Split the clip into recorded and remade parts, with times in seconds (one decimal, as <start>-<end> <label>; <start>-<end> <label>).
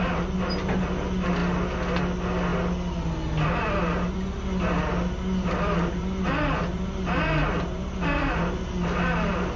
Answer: 0.0-9.6 recorded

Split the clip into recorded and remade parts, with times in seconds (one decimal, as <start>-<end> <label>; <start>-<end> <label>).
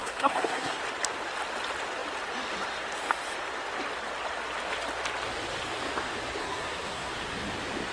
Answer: 0.0-0.8 remade; 0.8-6.4 recorded; 6.4-7.1 remade; 7.1-7.9 recorded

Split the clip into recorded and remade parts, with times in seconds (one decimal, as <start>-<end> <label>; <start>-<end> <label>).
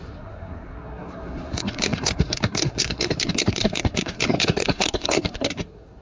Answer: 0.0-6.0 remade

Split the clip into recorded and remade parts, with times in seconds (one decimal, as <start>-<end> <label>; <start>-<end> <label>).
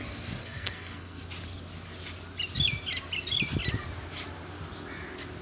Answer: 0.0-0.4 recorded; 0.4-1.2 remade; 1.2-5.4 recorded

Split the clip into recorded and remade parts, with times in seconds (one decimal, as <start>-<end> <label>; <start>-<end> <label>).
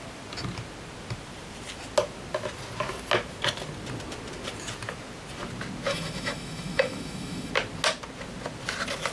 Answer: 0.0-5.9 recorded; 5.9-7.5 remade; 7.5-9.1 recorded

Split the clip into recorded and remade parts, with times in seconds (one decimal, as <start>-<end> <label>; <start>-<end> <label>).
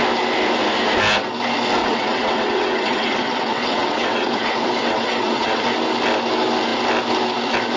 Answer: 0.0-1.8 recorded; 1.8-5.6 remade; 5.6-7.8 recorded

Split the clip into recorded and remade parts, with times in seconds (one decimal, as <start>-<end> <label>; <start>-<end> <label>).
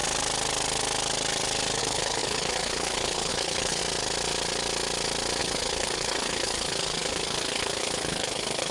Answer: 0.0-1.8 recorded; 1.8-3.8 remade; 3.8-5.4 recorded; 5.4-8.7 remade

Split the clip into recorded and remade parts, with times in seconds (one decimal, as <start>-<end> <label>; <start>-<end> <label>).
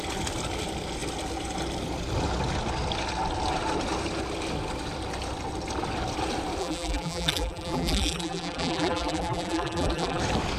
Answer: 0.0-6.6 recorded; 6.6-10.2 remade; 10.2-10.6 recorded